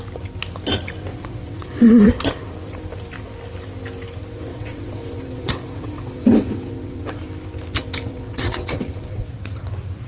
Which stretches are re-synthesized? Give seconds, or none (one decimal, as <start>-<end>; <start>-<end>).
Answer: 1.1-2.1; 4.5-7.2; 8.1-9.7